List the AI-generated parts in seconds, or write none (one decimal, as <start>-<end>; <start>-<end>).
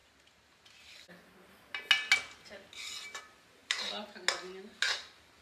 none